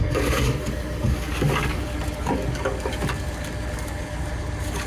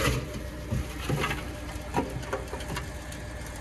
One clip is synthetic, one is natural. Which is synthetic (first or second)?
first